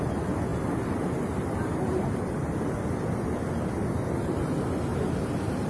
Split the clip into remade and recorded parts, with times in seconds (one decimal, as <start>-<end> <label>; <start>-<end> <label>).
0.0-4.9 recorded; 4.9-5.7 remade